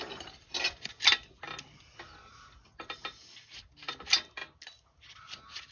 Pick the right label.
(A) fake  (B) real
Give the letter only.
B